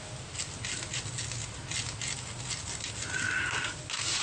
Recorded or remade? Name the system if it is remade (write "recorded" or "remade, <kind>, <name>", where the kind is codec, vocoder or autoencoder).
recorded